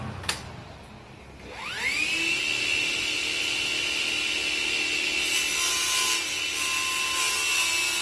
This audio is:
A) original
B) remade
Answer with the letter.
A